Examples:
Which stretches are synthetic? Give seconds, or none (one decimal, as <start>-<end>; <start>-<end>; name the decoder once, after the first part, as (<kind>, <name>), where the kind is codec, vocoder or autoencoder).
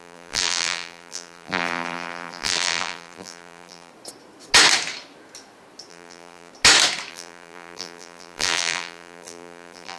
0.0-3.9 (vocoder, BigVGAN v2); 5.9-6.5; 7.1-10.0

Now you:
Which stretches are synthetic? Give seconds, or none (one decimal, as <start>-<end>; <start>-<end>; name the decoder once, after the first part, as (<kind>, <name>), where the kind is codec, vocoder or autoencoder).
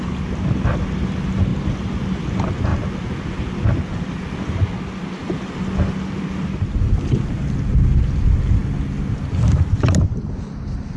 none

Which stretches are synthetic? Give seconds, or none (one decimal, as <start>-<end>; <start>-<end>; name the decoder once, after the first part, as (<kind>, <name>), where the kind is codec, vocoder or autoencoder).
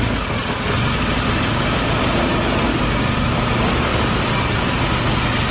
3.9-4.7 (vocoder, BigVGAN v2)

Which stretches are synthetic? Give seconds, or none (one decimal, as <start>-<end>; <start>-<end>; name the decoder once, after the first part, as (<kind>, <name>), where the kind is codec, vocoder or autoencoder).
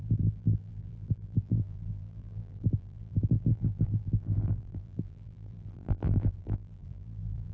0.0-7.5 (vocoder, BigVGAN v2)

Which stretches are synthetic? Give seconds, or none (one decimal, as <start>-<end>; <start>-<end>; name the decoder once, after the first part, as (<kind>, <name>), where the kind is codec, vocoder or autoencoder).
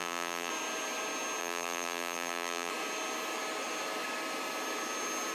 0.0-0.5 (vocoder, BigVGAN v2); 1.4-2.7